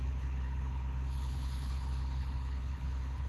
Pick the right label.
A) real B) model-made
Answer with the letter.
B